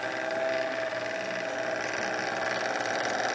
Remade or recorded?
recorded